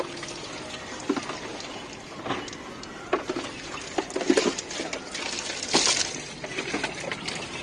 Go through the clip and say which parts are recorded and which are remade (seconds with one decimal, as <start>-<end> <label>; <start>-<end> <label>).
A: 0.0-7.6 recorded